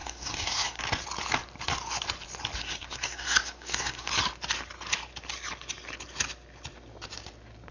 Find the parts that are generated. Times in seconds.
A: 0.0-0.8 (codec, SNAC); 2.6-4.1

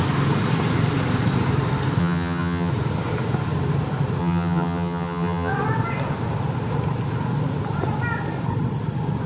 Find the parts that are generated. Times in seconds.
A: 2.0-2.7 (vocoder, HiFi-GAN); 4.2-5.5

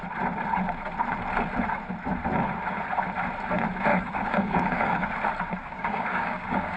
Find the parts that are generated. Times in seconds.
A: 3.9-5.1 (codec, DAC); 5.6-6.8

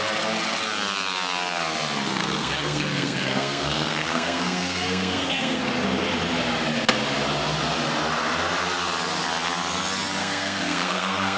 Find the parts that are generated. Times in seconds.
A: 2.2-5.7 (codec, SNAC); 10.2-11.4

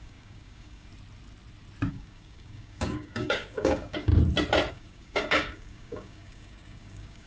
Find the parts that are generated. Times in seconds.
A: 0.0-0.9 (codec, DAC); 1.9-4.1; 4.7-7.3

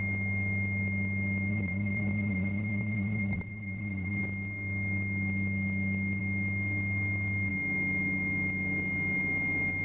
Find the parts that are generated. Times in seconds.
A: 1.5-4.2 (vocoder, Vocos)

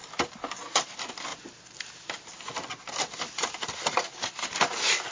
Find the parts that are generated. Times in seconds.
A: none

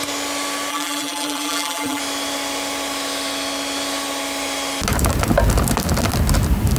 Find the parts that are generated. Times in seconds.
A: 0.7-2.0 (vocoder, BigVGAN v2)